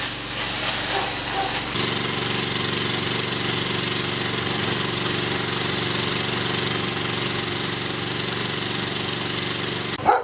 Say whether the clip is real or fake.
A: real